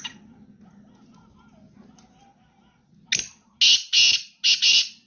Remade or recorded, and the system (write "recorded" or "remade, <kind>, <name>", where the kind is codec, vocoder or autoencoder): recorded